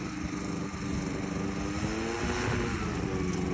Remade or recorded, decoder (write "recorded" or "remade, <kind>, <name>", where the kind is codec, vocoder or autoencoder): recorded